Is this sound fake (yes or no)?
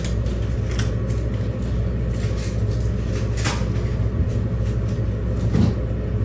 no